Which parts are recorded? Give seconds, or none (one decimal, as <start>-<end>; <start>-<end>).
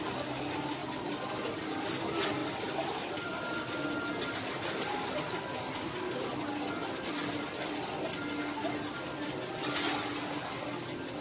0.0-11.2